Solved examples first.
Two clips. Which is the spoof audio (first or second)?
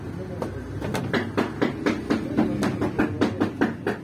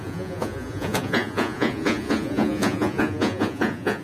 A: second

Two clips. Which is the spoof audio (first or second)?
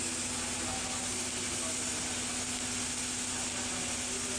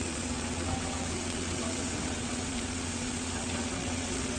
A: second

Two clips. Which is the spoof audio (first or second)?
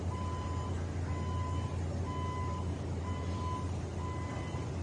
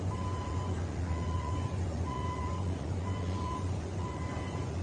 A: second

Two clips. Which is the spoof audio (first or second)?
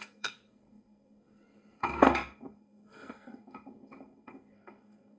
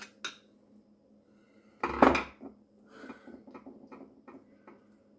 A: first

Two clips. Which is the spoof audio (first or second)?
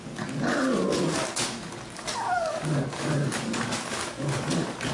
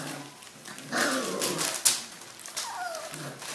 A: first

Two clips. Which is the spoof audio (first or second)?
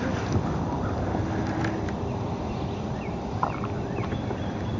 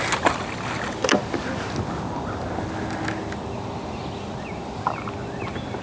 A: first